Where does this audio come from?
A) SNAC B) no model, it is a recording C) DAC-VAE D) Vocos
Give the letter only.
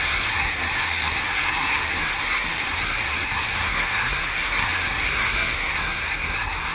A